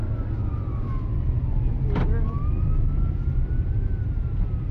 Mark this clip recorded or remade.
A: remade